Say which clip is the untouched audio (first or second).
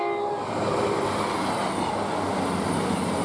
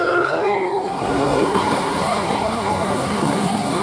first